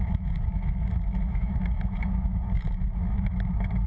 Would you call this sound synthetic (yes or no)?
yes